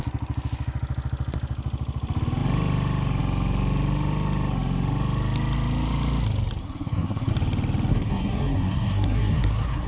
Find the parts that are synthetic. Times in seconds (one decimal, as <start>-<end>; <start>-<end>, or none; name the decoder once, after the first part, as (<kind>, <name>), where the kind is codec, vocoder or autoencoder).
6.6-7.3 (codec, SNAC); 7.9-9.9

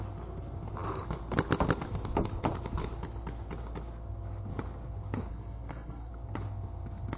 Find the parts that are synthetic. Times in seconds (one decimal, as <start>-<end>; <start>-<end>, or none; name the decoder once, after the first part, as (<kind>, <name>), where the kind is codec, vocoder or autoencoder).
5.3-6.1 (codec, SNAC)

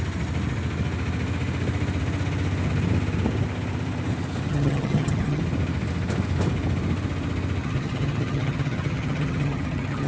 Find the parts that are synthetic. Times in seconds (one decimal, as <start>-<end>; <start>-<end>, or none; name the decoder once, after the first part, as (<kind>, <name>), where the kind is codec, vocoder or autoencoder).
4.5-5.4 (vocoder, HiFi-GAN); 7.6-10.1

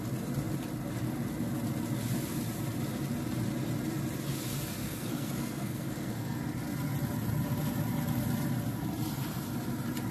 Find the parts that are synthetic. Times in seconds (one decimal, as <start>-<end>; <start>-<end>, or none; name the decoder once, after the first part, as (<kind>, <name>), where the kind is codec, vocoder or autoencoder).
4.8-6.4 (codec, SNAC)

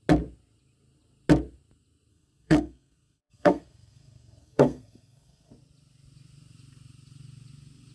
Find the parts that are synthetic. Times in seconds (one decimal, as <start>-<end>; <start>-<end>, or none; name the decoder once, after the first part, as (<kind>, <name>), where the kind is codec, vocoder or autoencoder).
2.1-5.5 (codec, SNAC)